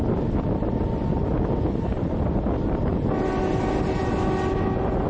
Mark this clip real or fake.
real